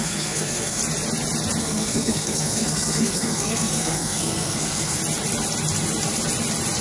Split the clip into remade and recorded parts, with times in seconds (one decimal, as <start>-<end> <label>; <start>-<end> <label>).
0.0-0.8 remade; 0.8-1.6 recorded; 1.6-5.0 remade; 5.0-6.8 recorded